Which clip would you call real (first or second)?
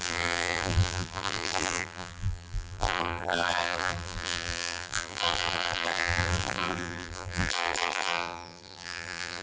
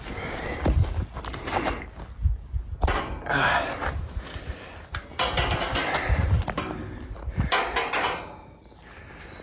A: second